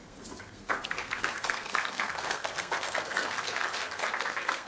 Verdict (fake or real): fake